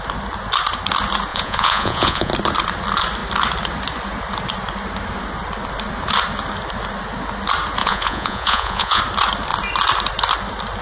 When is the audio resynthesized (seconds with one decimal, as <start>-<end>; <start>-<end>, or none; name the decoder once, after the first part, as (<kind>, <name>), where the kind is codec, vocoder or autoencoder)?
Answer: 1.3-2.3 (vocoder, Vocos); 7.8-9.0